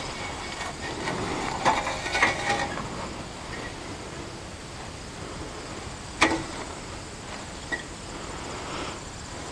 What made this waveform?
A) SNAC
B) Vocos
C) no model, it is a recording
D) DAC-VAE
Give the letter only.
C